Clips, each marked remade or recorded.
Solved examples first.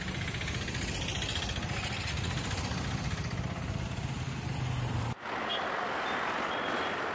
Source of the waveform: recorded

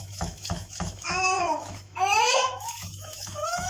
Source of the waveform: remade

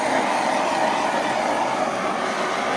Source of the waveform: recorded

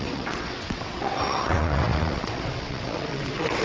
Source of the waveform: remade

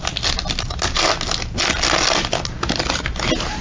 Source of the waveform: recorded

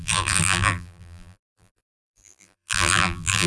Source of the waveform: remade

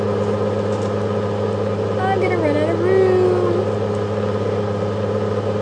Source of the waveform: recorded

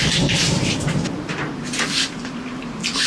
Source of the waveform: recorded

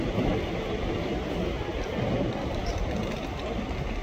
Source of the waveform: recorded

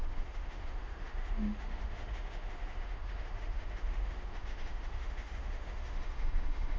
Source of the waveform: remade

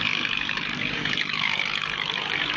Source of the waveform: remade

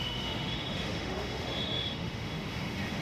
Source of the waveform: remade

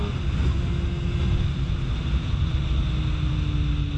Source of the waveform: recorded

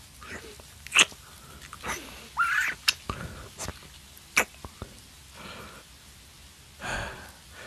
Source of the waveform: recorded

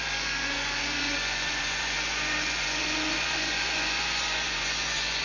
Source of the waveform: remade